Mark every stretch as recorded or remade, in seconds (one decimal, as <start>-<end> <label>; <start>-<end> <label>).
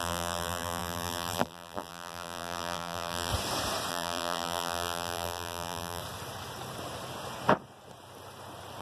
0.0-3.3 remade; 3.3-3.9 recorded; 3.9-6.0 remade; 6.0-8.8 recorded